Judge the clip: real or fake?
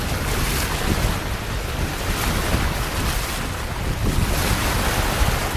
real